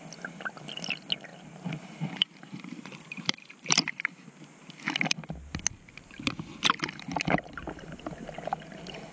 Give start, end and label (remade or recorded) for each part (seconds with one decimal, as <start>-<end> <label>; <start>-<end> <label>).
0.0-1.3 recorded; 1.3-4.3 remade; 4.3-9.1 recorded